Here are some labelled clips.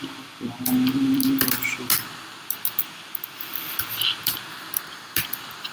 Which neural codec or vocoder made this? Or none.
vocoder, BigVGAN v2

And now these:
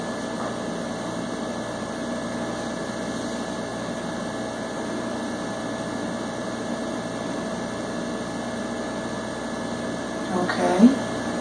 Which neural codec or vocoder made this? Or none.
none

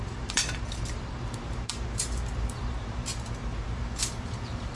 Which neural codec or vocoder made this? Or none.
vocoder, BigVGAN v2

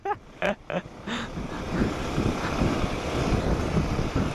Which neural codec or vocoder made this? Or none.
vocoder, BigVGAN v2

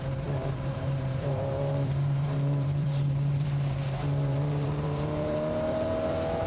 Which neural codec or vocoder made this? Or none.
vocoder, BigVGAN v2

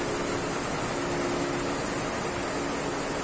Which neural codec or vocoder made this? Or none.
none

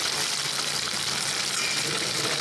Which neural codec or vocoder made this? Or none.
vocoder, BigVGAN v2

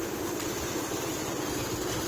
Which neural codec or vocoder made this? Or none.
none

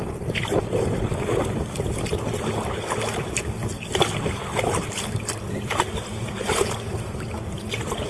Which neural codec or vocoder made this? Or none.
none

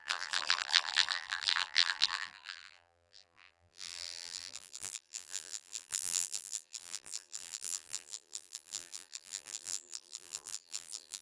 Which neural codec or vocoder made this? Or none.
vocoder, BigVGAN v2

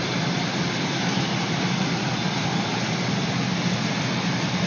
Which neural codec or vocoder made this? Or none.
vocoder, BigVGAN v2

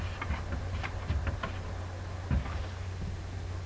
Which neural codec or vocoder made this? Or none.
none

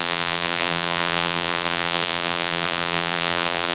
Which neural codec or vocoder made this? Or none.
vocoder, BigVGAN v2